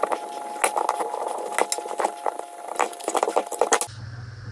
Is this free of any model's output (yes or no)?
yes